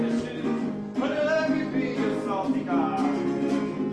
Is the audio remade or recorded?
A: recorded